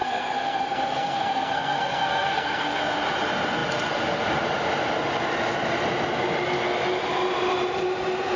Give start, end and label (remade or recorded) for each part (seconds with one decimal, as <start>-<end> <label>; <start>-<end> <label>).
0.0-2.8 remade; 2.8-8.4 recorded